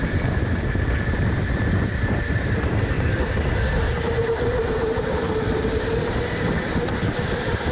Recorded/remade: remade